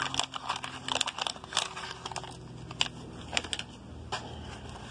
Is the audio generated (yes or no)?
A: no